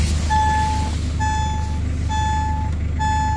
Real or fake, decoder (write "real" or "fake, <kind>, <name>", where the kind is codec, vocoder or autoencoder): real